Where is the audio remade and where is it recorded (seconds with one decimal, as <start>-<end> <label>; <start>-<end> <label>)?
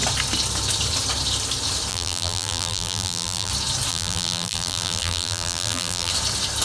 0.0-1.9 recorded; 1.9-3.5 remade; 3.5-3.9 recorded; 3.9-6.1 remade; 6.1-6.6 recorded